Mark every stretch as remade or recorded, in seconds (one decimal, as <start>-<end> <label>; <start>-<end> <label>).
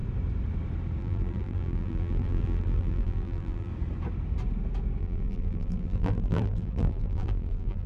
0.0-1.0 recorded; 1.0-3.7 remade; 3.7-5.0 recorded; 5.0-7.9 remade